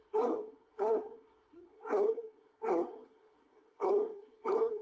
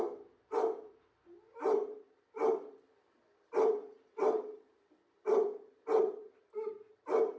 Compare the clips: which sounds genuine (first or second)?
second